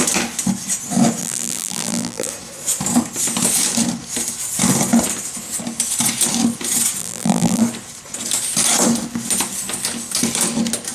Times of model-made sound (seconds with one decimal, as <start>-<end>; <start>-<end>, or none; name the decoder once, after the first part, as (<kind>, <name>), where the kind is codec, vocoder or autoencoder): 1.2-2.3 (vocoder, BigVGAN v2); 7.0-7.6